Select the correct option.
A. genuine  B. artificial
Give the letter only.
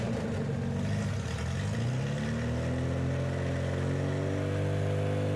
A